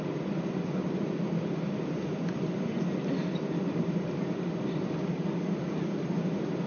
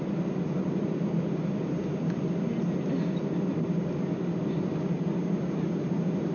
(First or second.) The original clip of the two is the second